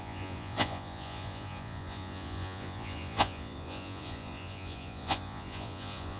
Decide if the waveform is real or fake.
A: fake